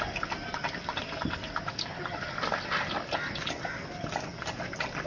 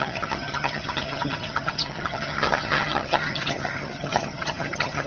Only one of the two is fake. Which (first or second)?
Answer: second